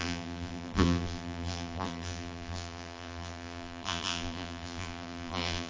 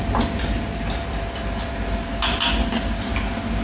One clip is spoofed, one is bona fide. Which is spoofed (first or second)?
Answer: first